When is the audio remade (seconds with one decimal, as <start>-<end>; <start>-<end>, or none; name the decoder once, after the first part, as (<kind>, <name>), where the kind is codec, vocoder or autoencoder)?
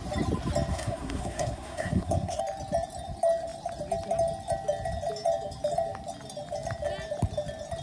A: 0.7-2.4 (codec, SNAC)